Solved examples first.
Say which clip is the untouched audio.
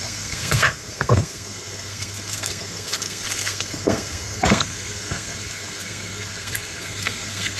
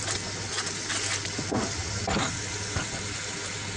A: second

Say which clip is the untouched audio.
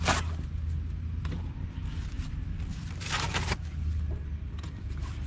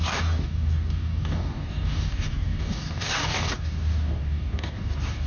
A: first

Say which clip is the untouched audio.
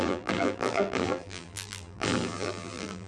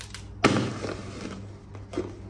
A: second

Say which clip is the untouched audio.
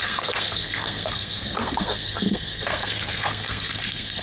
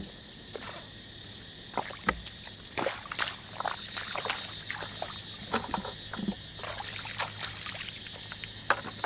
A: second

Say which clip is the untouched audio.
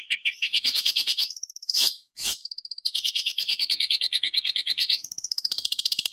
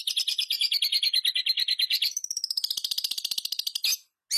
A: second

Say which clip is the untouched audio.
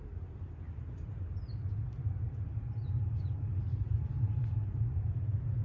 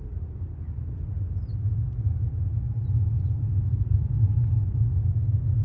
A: second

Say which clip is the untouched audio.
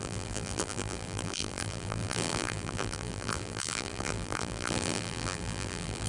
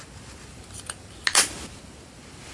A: second